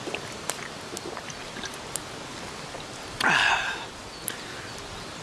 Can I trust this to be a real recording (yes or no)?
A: yes